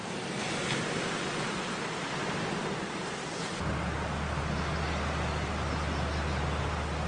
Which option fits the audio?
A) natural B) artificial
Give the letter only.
A